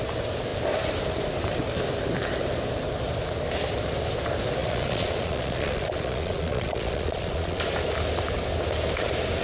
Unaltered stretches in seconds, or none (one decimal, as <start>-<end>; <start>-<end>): 0.0-4.6; 7.6-9.4